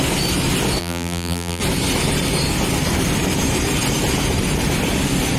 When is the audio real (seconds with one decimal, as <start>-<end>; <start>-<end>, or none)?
0.0-0.8; 1.6-5.4